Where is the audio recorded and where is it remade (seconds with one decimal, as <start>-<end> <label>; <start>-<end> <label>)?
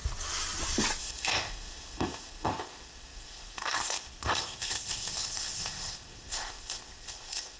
0.0-1.0 recorded; 1.0-7.6 remade